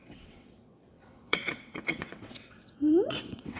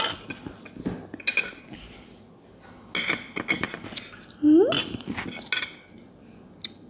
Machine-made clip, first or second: first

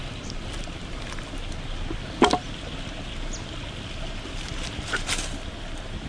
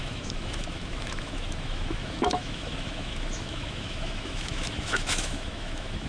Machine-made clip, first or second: second